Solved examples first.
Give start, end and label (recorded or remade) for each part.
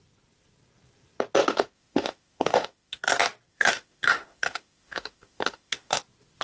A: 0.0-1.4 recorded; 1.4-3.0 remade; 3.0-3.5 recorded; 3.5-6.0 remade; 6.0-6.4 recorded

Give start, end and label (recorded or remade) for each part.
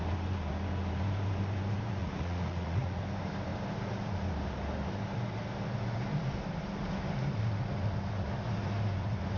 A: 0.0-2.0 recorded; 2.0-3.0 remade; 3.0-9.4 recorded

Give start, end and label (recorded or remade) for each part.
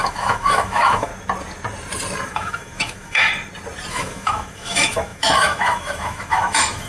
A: 0.0-1.1 remade; 1.1-2.3 recorded; 2.3-3.3 remade; 3.3-3.9 recorded; 3.9-6.9 remade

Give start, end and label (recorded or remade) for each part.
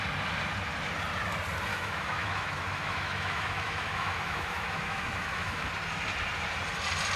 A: 0.0-1.7 recorded; 1.7-5.7 remade; 5.7-7.2 recorded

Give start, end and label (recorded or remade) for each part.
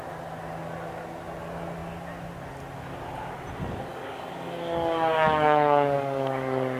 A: 0.0-3.9 recorded; 3.9-6.8 remade